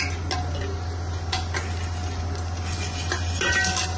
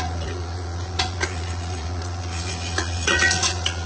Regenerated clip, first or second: second